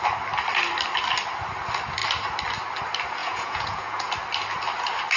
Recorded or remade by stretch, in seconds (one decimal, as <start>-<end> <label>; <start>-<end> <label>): 0.0-3.2 recorded; 3.2-4.1 remade; 4.1-5.2 recorded